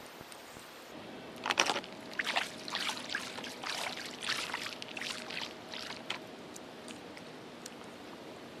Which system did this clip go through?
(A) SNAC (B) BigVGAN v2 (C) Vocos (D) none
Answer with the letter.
D